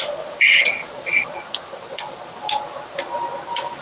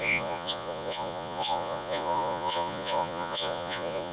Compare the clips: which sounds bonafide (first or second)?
first